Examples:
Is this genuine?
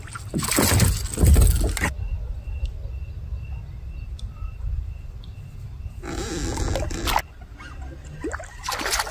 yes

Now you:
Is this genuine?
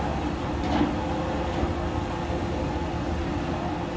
yes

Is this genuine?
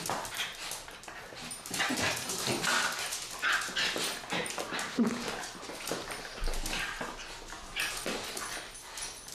yes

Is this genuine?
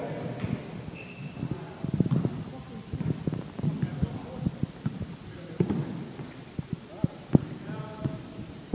yes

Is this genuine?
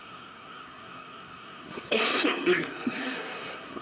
no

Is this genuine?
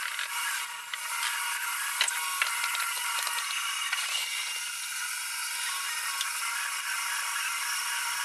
yes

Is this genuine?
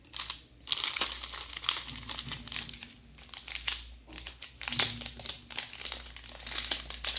yes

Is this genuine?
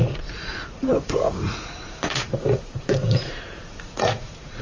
no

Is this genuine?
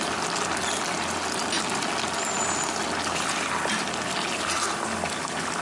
yes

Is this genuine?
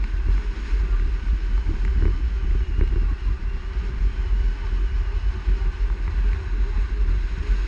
yes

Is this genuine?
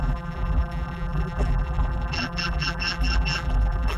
no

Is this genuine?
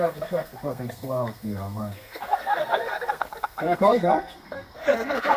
no